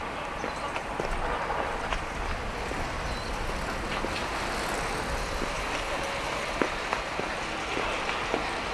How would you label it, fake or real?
real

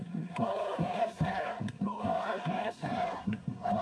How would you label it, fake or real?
fake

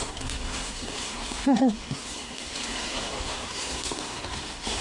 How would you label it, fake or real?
fake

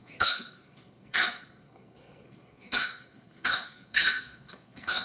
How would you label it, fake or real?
fake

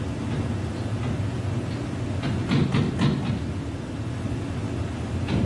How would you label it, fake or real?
real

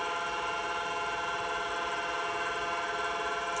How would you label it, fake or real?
real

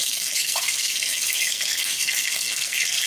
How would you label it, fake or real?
fake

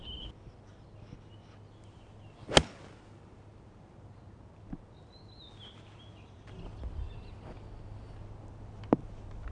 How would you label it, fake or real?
real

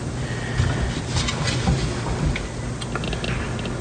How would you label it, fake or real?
real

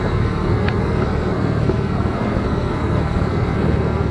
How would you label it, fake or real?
fake